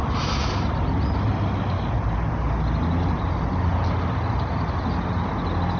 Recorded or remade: recorded